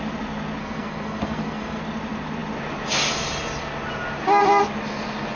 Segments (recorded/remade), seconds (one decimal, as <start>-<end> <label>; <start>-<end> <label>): 0.0-0.6 recorded; 0.6-1.8 remade; 1.8-5.3 recorded